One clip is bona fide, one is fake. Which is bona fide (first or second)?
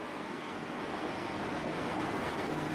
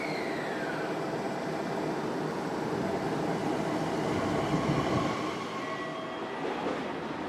second